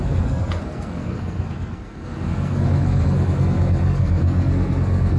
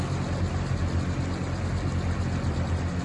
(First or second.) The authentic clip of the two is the second